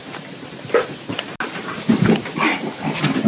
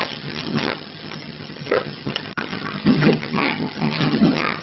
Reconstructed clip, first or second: second